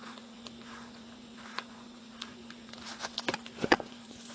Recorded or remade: remade